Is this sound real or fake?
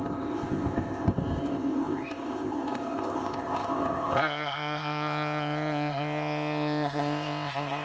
fake